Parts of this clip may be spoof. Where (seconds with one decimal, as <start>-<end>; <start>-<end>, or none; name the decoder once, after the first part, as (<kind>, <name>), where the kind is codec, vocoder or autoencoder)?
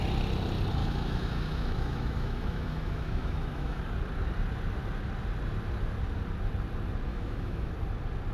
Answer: 0.8-3.8 (autoencoder, DAC-VAE); 7.1-7.7